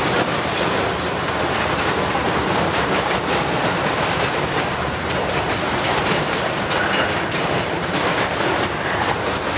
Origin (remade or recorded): remade